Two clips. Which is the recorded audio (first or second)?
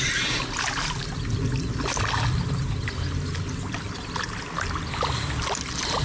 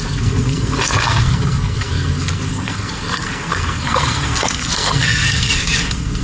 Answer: first